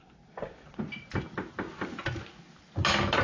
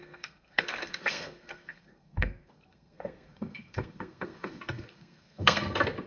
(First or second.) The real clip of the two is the first